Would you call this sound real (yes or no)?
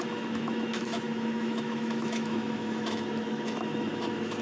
no